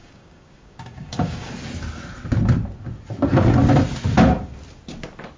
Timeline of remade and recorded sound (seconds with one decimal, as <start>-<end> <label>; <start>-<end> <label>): 0.0-1.5 remade; 1.5-5.4 recorded